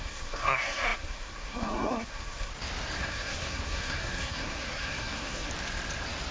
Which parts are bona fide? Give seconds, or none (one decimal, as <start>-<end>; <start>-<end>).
2.5-3.0; 5.5-6.3